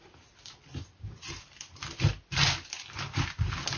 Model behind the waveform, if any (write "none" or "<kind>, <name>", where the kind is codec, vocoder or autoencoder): none